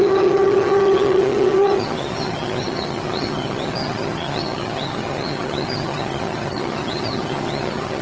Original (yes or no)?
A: no